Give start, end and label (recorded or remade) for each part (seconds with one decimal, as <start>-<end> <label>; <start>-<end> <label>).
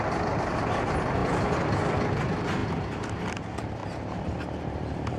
0.0-3.8 recorded; 3.8-5.2 remade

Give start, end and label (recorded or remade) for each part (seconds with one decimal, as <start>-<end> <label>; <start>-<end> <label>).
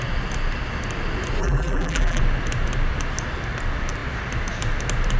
0.0-1.4 recorded; 1.4-2.2 remade; 2.2-5.2 recorded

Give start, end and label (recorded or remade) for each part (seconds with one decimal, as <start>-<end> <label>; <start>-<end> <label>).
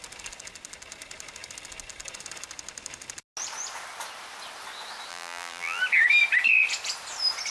0.0-5.1 recorded; 5.1-5.8 remade; 5.8-7.5 recorded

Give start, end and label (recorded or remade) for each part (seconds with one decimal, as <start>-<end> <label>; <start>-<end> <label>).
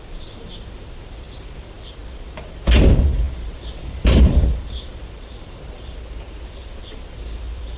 0.0-2.0 remade; 2.0-3.8 recorded; 3.8-7.8 remade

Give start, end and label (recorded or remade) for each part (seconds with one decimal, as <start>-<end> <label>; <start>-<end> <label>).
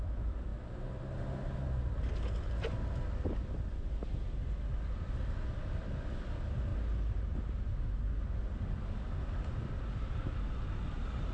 0.0-0.5 remade; 0.5-3.3 recorded; 3.3-4.0 remade; 4.0-5.6 recorded; 5.6-6.7 remade; 6.7-8.5 recorded; 8.5-11.3 remade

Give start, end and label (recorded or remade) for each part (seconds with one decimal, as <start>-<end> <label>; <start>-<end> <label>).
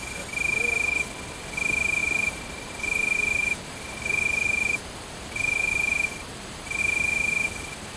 0.0-2.0 recorded; 2.0-6.8 remade; 6.8-8.0 recorded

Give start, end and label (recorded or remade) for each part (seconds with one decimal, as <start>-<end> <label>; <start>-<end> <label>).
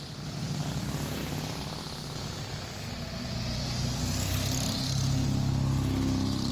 0.0-6.5 recorded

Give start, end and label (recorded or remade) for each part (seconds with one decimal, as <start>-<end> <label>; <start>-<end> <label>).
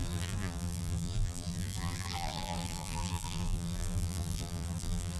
0.0-5.2 remade